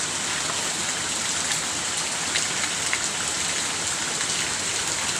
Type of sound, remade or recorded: recorded